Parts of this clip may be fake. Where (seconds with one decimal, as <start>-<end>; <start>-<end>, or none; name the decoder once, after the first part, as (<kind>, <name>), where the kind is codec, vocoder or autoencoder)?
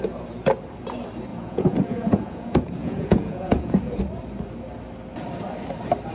1.3-4.0 (vocoder, Vocos)